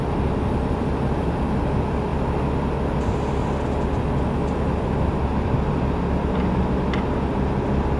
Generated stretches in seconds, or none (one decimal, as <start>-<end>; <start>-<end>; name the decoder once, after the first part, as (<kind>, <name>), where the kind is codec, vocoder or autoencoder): none